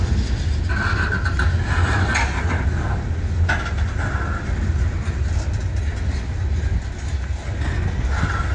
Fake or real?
real